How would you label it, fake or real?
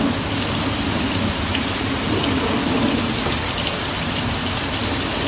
real